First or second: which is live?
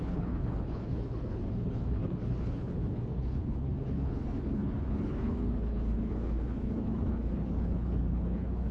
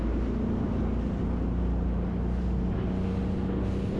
second